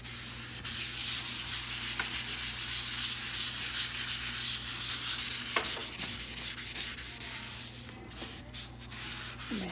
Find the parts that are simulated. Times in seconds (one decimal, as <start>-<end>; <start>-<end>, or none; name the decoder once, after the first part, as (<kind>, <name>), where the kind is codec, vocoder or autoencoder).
none